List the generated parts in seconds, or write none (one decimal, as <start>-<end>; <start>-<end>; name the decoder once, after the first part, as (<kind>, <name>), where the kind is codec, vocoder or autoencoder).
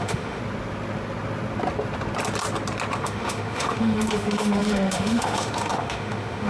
0.0-0.4 (autoencoder, DAC-VAE); 3.0-6.5